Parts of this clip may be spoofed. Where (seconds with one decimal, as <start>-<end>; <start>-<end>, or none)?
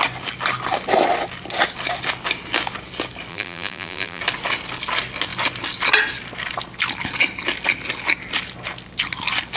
3.3-4.2